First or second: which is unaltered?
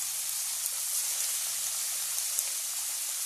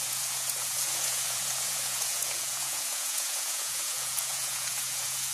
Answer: first